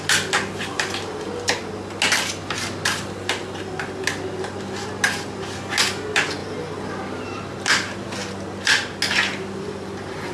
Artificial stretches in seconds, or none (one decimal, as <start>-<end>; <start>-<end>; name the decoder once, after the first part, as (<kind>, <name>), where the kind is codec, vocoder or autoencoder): none